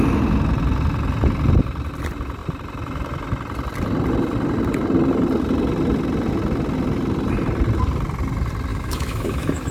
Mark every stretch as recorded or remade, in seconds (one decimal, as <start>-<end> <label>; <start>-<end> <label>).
0.0-8.7 recorded; 8.7-9.7 remade